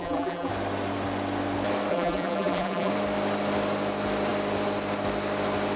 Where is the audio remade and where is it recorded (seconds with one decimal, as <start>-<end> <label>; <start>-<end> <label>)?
0.0-0.5 remade; 0.5-1.9 recorded; 1.9-2.9 remade; 2.9-5.8 recorded